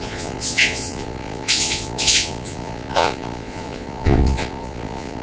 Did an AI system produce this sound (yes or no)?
yes